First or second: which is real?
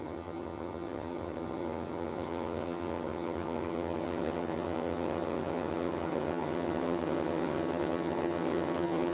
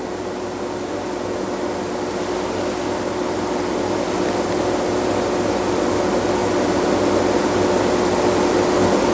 second